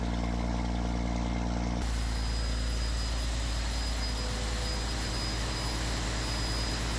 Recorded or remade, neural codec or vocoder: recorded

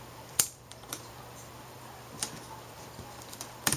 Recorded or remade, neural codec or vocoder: remade, vocoder, BigVGAN v2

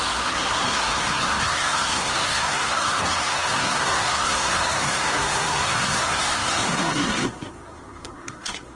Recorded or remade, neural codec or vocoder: remade, codec, SNAC